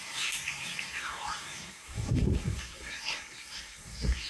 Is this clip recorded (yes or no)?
no